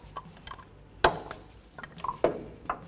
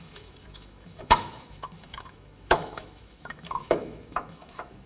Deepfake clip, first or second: second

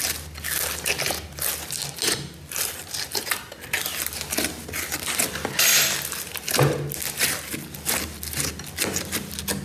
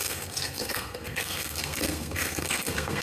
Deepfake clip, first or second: second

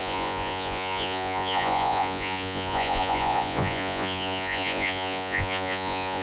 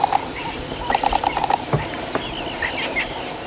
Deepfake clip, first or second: first